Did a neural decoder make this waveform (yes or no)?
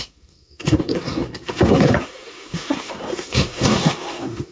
yes